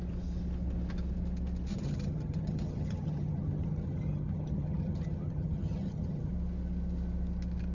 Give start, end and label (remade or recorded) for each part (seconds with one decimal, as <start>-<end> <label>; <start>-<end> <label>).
0.0-1.7 recorded; 1.7-6.3 remade; 6.3-7.7 recorded